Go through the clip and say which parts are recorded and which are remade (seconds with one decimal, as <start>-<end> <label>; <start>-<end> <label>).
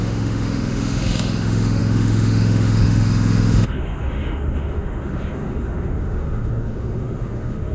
0.0-7.7 remade